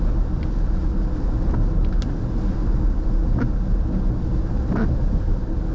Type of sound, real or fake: real